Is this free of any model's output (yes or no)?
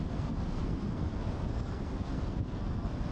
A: no